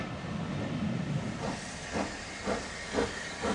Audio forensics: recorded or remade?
recorded